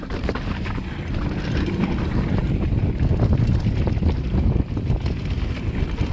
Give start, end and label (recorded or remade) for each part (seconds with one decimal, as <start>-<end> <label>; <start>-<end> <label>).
0.0-6.1 recorded